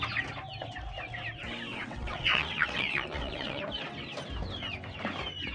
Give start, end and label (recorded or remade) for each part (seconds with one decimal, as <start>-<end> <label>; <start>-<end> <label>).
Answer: 0.0-1.7 recorded; 1.7-3.6 remade; 3.6-5.5 recorded